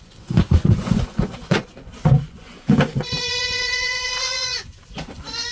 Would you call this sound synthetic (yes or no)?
yes